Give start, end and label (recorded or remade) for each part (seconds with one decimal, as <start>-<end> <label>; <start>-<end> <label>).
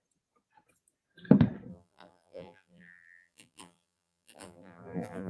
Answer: 0.0-1.7 recorded; 1.7-5.3 remade